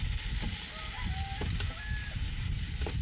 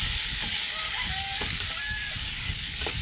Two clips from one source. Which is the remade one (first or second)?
second